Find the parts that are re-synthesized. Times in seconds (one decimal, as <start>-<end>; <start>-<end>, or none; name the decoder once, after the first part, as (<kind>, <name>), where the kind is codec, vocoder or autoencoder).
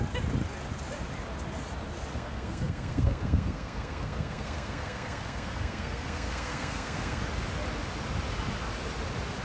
2.1-7.2 (codec, SNAC)